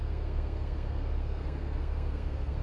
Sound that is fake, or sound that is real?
fake